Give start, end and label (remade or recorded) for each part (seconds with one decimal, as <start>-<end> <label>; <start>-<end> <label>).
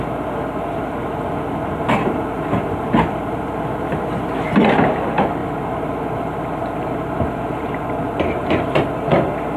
0.0-9.6 recorded